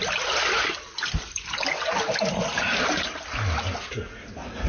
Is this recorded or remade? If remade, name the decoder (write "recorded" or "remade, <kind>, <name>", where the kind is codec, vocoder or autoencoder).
recorded